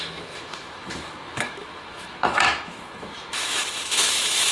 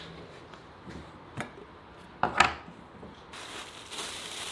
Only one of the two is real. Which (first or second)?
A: second